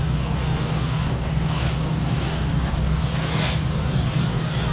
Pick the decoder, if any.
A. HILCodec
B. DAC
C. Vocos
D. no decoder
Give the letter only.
B